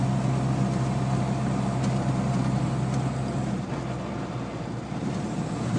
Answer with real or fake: real